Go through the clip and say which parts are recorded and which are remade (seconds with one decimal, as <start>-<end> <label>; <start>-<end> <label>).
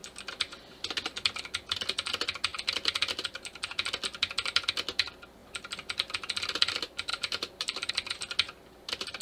0.0-7.1 recorded; 7.1-7.9 remade; 7.9-9.2 recorded